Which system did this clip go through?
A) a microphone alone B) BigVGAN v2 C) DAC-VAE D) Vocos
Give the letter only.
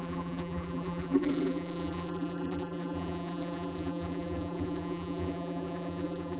B